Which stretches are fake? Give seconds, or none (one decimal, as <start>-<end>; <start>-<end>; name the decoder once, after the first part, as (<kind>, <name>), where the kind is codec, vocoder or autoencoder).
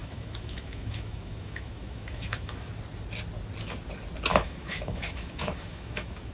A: 0.0-2.7 (autoencoder, DAC-VAE); 4.3-6.3